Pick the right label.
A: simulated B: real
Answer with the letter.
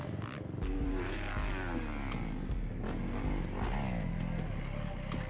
B